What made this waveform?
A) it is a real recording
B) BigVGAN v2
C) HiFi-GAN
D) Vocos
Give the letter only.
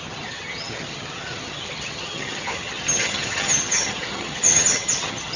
C